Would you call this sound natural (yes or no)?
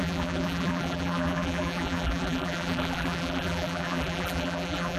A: no